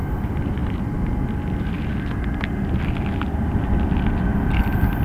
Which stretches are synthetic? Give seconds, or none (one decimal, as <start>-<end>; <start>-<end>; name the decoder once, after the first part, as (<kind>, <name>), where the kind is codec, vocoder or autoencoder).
none